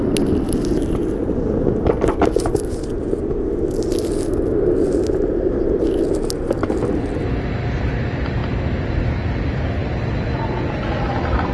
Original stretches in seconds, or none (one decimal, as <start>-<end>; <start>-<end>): 0.0-11.5